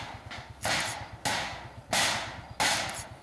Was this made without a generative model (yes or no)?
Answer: yes